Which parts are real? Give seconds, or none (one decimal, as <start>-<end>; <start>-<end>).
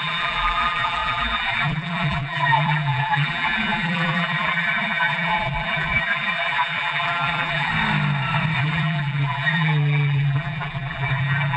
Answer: 7.7-8.6